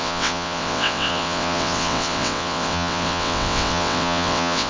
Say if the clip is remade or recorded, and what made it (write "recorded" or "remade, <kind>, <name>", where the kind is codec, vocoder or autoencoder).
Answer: remade, vocoder, WaveNeXt